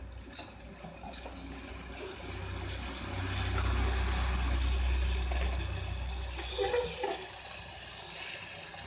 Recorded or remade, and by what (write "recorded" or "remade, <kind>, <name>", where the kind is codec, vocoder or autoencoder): recorded